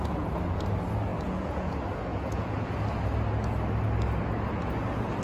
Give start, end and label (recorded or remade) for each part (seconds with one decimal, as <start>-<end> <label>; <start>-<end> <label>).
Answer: 0.0-1.1 recorded; 1.1-1.7 remade; 1.7-2.1 recorded; 2.1-2.7 remade; 2.7-5.2 recorded

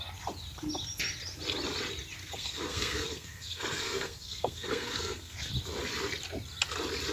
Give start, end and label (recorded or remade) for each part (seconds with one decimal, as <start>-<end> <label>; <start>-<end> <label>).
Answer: 0.0-2.2 recorded; 2.2-5.5 remade; 5.5-7.1 recorded

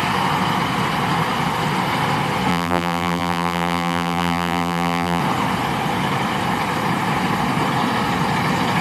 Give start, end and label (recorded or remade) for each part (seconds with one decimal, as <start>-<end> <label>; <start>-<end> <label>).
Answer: 0.0-2.5 recorded; 2.5-5.2 remade; 5.2-8.8 recorded